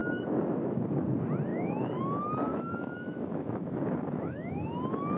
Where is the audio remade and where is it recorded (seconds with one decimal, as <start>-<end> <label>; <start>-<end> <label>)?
0.0-0.7 remade; 0.7-1.5 recorded; 1.5-2.0 remade; 2.0-2.5 recorded; 2.5-4.5 remade; 4.5-5.2 recorded